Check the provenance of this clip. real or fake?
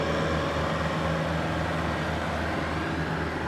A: real